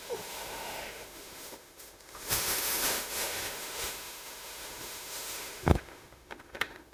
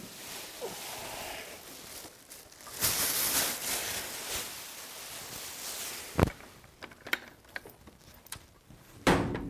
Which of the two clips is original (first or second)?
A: second